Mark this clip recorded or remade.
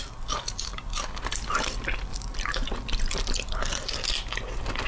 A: recorded